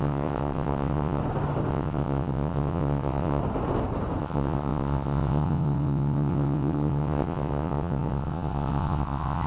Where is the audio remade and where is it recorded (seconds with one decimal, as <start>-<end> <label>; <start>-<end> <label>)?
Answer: 0.0-1.2 remade; 1.2-1.7 recorded; 1.7-3.4 remade; 3.4-4.2 recorded; 4.2-9.5 remade